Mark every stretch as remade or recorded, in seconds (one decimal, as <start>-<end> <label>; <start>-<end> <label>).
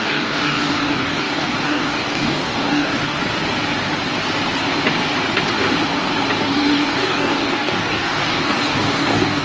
0.0-3.2 remade; 3.2-6.4 recorded; 6.4-9.4 remade